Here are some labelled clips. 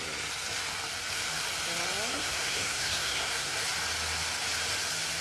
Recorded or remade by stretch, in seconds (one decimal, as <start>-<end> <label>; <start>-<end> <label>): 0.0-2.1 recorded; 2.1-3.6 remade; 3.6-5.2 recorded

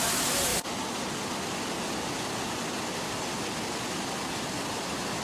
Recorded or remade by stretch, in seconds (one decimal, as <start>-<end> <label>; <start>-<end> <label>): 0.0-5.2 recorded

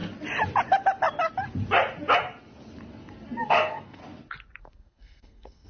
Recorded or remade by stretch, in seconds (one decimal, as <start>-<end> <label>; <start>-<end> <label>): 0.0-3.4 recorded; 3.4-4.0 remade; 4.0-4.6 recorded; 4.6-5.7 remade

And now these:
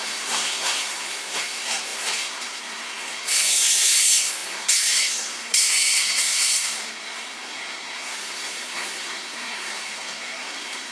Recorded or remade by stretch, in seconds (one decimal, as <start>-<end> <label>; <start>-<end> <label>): 0.0-10.9 remade

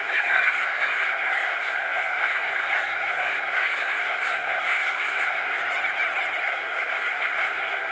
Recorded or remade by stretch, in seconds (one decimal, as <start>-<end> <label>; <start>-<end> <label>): 0.0-5.6 remade; 5.6-6.4 recorded; 6.4-7.9 remade

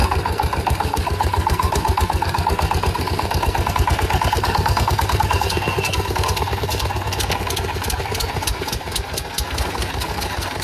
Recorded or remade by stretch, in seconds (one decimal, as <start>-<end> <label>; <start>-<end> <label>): 0.0-10.6 remade

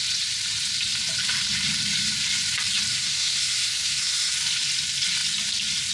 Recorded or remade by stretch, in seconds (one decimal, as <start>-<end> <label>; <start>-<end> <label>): 0.0-2.9 recorded; 2.9-4.3 remade; 4.3-5.9 recorded